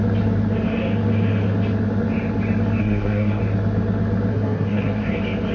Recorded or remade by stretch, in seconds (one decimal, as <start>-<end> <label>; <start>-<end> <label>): 0.0-2.8 recorded; 2.8-3.4 remade; 3.4-4.3 recorded; 4.3-5.1 remade; 5.1-5.5 recorded